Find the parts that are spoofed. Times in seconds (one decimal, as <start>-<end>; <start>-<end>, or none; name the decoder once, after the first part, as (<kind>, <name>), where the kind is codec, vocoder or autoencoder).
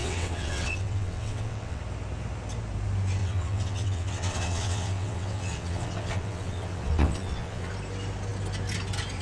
0.0-1.8 (vocoder, WaveNeXt); 3.2-7.7